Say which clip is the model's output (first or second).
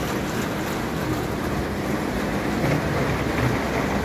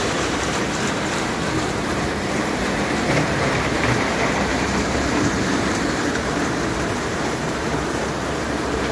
second